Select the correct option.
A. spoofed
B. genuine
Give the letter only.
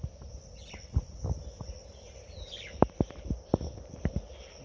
B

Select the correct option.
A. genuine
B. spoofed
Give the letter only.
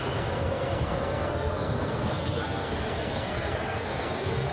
B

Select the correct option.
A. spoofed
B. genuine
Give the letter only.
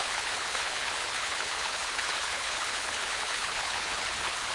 A